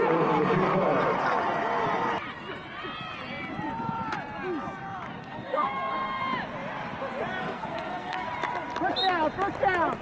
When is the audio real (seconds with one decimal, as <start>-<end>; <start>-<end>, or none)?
0.0-5.2; 6.2-7.4; 8.3-10.0